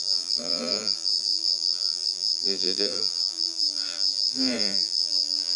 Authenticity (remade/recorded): remade